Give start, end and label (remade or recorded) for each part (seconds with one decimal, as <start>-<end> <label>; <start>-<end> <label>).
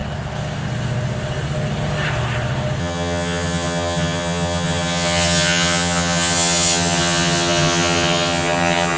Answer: 0.0-2.8 recorded; 2.8-9.0 remade